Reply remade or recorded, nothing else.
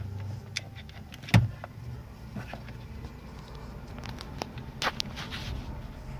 recorded